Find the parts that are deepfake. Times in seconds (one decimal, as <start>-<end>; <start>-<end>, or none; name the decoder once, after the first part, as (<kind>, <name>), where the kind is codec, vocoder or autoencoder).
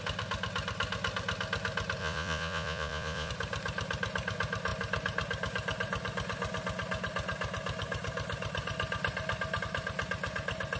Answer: 2.0-3.3 (vocoder, Vocos)